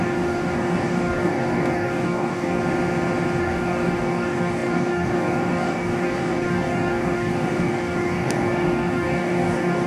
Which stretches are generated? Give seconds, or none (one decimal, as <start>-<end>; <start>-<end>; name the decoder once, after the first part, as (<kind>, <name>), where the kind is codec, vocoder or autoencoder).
0.0-2.6 (codec, DAC); 3.4-9.9